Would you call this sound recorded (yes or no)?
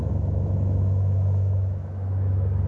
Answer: no